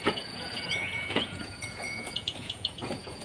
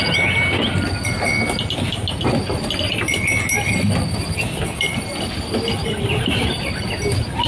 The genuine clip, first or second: second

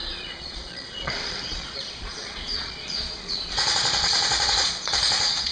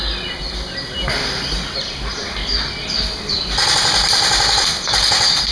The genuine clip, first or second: second